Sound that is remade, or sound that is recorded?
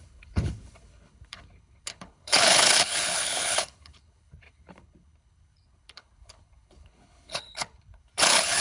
remade